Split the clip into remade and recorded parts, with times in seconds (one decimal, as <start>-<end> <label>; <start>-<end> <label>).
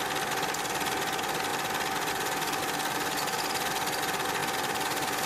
0.0-5.3 recorded